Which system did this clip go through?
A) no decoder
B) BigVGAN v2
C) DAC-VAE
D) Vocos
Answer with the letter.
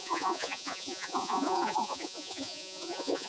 D